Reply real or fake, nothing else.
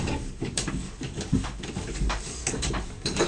fake